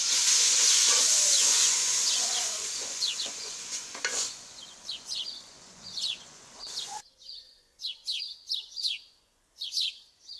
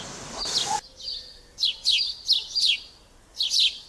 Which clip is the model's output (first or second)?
first